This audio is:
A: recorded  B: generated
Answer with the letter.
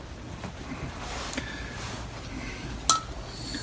A